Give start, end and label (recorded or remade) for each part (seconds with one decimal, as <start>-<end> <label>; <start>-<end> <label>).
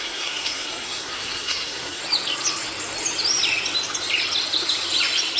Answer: 0.0-2.0 remade; 2.0-5.4 recorded